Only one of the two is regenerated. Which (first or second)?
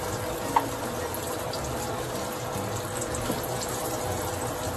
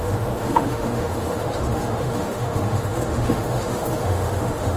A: second